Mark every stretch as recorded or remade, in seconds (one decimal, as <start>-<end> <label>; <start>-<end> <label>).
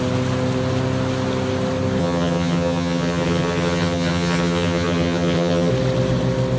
0.0-2.0 recorded; 2.0-5.7 remade; 5.7-6.6 recorded